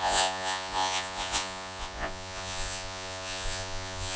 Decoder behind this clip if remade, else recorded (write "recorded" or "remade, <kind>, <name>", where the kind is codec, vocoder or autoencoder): remade, vocoder, Vocos